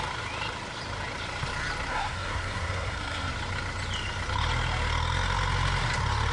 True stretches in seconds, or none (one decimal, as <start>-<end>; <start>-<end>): 0.0-1.9; 3.3-6.3